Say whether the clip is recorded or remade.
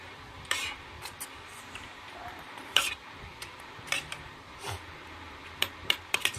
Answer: remade